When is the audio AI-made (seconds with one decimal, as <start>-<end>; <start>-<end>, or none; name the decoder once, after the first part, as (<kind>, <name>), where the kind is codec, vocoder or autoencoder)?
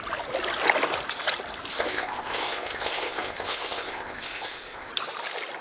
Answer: 1.7-4.9 (codec, ZipCodec)